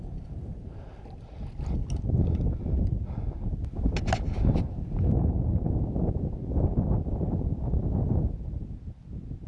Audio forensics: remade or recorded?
recorded